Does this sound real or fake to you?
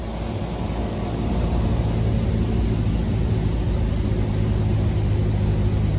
real